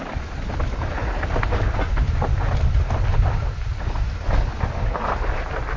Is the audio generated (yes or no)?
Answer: no